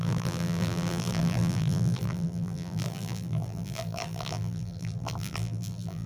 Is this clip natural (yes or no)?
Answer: no